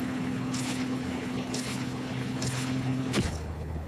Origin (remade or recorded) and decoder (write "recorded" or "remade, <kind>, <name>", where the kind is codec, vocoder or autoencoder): remade, codec, HILCodec